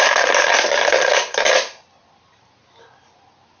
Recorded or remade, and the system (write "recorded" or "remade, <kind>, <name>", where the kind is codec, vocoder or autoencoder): recorded